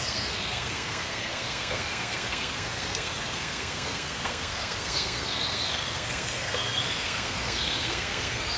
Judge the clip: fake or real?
fake